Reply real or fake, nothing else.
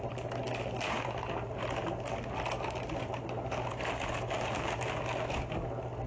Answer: real